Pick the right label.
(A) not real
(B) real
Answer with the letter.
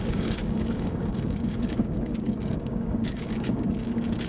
A